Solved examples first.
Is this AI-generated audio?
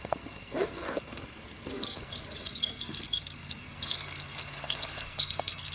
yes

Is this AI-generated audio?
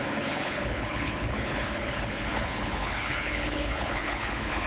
yes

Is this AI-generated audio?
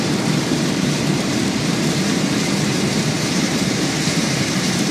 yes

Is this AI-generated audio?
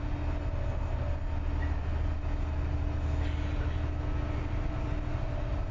no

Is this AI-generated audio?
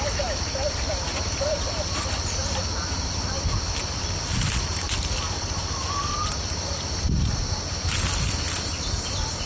no